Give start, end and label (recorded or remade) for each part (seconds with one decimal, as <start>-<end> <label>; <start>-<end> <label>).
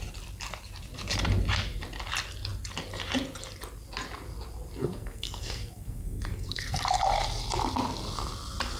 0.0-4.8 recorded; 4.8-6.8 remade; 6.8-8.8 recorded